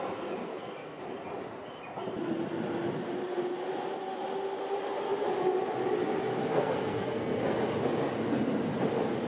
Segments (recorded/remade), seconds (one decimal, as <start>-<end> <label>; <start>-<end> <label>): 0.0-0.4 recorded; 0.4-1.0 remade; 1.0-6.5 recorded; 6.5-7.6 remade; 7.6-9.3 recorded